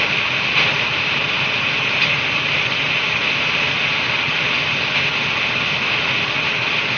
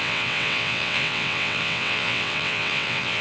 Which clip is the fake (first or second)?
second